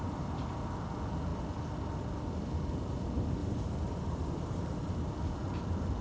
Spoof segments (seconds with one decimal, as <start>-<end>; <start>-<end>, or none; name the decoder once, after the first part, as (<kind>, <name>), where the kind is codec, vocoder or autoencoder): 3.4-4.9 (vocoder, BigVGAN v2)